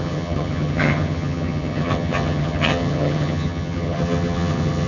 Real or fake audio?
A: fake